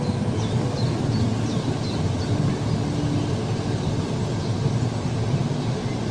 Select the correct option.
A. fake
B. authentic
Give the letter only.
B